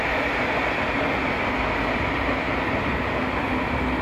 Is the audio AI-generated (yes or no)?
no